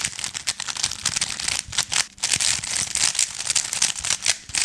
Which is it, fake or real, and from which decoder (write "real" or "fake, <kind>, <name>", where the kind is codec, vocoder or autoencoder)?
real